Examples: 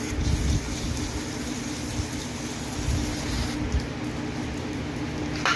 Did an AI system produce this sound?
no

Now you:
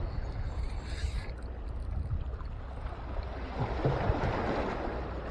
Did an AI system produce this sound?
no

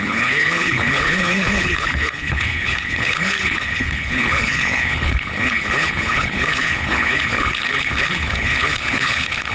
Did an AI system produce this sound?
yes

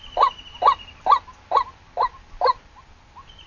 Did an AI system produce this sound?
no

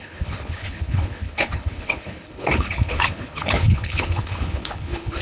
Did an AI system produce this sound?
yes